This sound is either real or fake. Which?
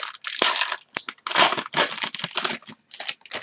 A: real